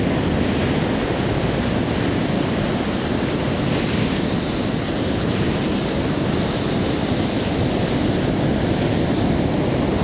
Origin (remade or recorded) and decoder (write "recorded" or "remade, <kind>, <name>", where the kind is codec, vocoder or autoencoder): recorded